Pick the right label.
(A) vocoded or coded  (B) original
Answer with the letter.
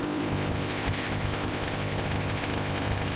A